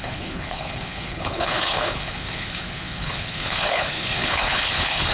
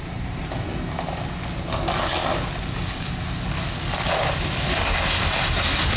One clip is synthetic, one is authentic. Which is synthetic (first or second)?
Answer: first